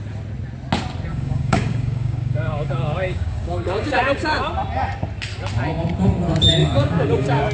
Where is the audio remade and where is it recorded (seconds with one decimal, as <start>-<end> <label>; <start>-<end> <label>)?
0.0-1.1 recorded; 1.1-4.4 remade; 4.4-6.6 recorded; 6.6-7.5 remade